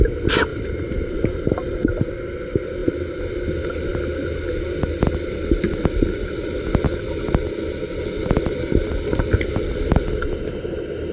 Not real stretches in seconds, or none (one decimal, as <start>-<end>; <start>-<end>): 0.5-1.5; 2.8-3.3; 8.2-8.9